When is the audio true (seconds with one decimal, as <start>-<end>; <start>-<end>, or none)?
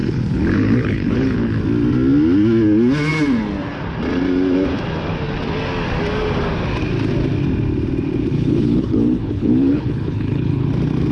1.6-8.3; 10.7-11.1